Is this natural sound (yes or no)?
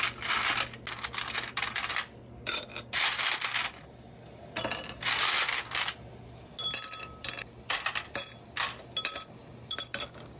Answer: yes